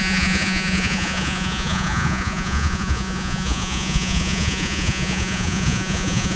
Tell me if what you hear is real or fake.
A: fake